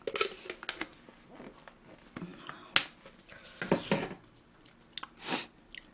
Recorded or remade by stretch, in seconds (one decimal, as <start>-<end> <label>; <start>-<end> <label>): 0.0-5.9 recorded

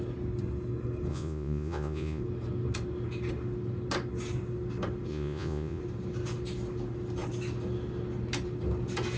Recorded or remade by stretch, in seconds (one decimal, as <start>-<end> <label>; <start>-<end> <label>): 0.0-1.1 recorded; 1.1-2.2 remade; 2.2-5.1 recorded; 5.1-5.8 remade; 5.8-9.2 recorded

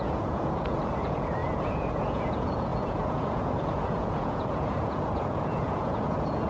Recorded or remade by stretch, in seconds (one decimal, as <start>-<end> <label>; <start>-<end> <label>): 0.0-6.5 remade

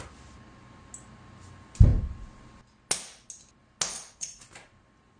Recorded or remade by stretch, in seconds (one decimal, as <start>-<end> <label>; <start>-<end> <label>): 0.0-3.9 recorded; 3.9-4.4 remade; 4.4-5.2 recorded

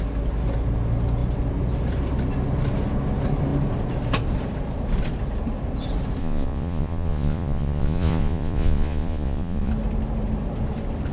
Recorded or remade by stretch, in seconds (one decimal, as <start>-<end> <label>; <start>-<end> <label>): 0.0-6.2 recorded; 6.2-9.7 remade; 9.7-11.1 recorded

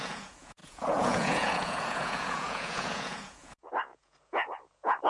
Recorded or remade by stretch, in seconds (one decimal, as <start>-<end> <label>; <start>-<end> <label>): 0.0-5.1 remade

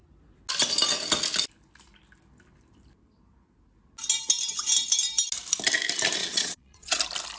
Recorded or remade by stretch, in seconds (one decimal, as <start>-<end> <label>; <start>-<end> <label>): 0.0-6.2 recorded; 6.2-7.0 remade; 7.0-7.4 recorded

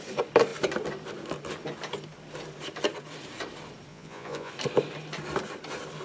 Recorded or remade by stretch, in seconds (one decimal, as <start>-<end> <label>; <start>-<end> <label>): 0.0-3.9 recorded; 3.9-4.5 remade; 4.5-6.0 recorded